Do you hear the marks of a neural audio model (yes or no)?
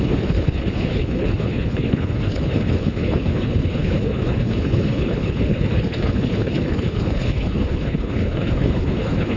yes